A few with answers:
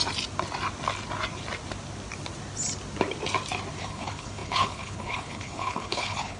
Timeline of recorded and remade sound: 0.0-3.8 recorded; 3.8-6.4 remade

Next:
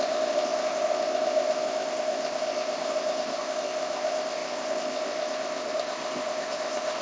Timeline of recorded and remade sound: 0.0-7.0 remade

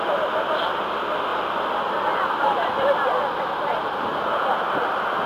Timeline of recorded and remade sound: 0.0-5.3 recorded

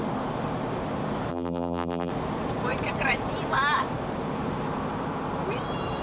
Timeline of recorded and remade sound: 0.0-1.3 recorded; 1.3-2.1 remade; 2.1-6.0 recorded